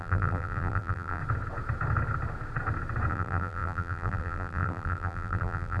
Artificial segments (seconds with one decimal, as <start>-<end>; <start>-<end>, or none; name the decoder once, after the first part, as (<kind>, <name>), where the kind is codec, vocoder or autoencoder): 0.0-1.2 (vocoder, BigVGAN v2); 3.1-5.8